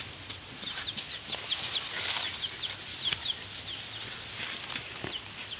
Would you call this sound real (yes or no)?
yes